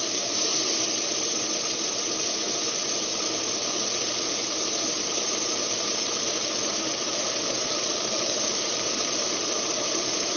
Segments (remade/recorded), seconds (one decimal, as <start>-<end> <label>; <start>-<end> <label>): 0.0-0.5 remade; 0.5-2.7 recorded; 2.7-3.1 remade; 3.1-3.7 recorded; 3.7-4.4 remade; 4.4-5.2 recorded; 5.2-10.4 remade